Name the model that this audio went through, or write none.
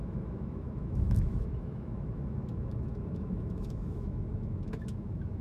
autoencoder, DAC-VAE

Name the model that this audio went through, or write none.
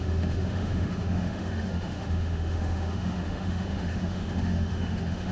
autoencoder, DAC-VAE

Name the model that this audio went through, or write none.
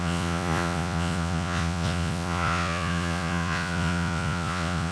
vocoder, Vocos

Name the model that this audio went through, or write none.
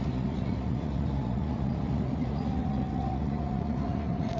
vocoder, Vocos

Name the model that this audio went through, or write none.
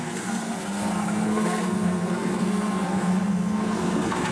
codec, SNAC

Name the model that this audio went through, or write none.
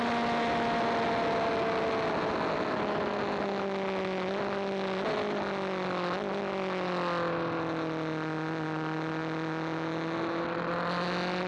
none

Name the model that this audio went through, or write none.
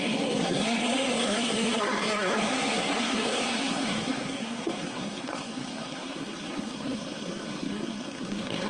codec, SNAC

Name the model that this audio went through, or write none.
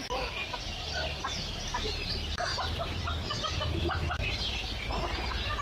none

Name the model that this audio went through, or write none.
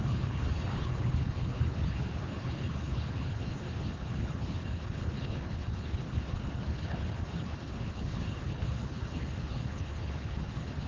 codec, HILCodec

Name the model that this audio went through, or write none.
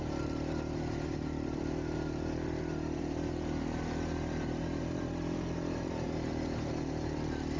vocoder, BigVGAN v2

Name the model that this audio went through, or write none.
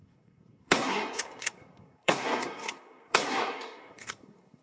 codec, SNAC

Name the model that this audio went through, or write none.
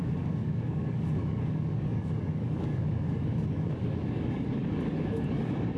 codec, DAC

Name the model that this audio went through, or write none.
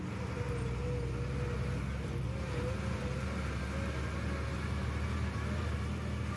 none